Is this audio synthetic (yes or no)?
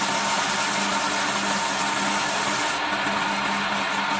no